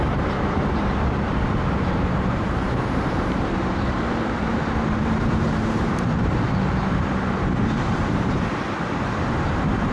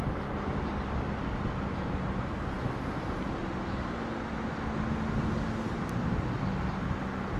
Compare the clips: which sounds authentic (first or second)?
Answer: second